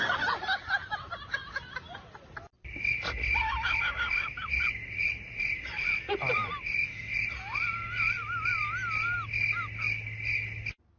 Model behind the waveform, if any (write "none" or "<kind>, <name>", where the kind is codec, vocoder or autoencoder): none